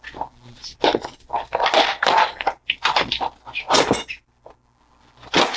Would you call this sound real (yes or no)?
yes